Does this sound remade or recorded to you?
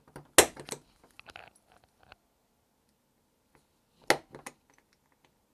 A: recorded